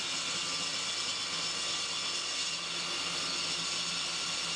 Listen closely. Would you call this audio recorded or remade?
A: recorded